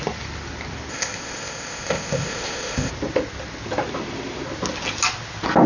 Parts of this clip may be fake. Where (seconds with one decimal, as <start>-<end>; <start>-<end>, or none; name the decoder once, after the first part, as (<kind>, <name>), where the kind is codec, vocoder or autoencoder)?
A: 0.9-2.9 (codec, ZipCodec)